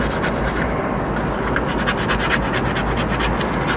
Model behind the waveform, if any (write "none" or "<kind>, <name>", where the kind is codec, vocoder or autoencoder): none